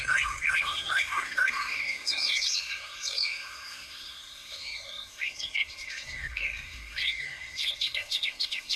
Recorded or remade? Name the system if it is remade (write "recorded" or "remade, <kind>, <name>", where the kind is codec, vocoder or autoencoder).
remade, codec, SNAC